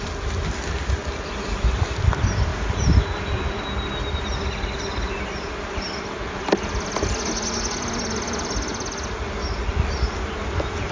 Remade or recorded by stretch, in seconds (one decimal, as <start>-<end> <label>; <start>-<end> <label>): 0.0-8.7 recorded; 8.7-9.7 remade; 9.7-10.9 recorded